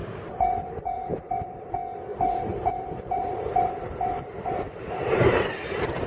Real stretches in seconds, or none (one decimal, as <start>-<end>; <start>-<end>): 1.7-2.1